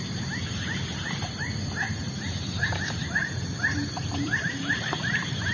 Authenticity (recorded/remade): remade